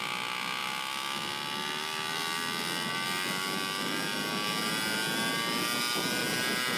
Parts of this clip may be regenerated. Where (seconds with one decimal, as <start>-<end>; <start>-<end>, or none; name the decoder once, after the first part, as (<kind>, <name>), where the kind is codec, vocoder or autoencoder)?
none